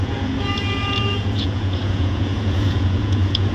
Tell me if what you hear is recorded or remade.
remade